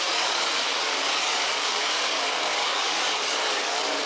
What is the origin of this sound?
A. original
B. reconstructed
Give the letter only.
B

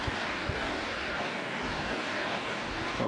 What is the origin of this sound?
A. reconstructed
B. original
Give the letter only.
A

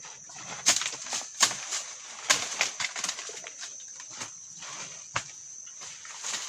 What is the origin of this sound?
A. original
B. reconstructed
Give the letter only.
A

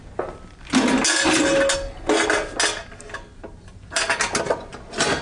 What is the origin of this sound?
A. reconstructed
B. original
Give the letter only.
B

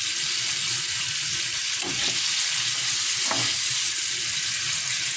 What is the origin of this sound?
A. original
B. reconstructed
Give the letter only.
A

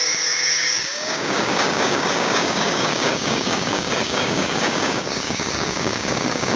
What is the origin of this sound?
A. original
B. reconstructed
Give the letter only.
B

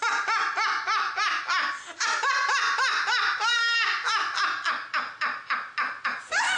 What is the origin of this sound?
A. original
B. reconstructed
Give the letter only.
A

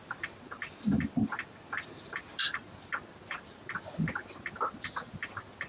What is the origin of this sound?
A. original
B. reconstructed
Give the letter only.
A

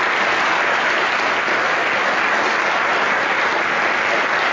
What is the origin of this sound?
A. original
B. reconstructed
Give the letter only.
A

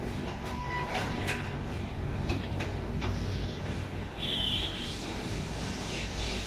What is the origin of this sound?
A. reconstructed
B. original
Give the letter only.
A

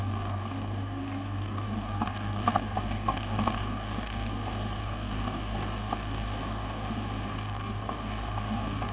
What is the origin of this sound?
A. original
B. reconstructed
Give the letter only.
B